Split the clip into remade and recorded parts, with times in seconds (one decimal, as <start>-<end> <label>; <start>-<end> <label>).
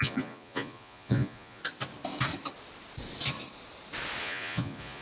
0.0-1.6 remade; 1.6-4.2 recorded; 4.2-5.0 remade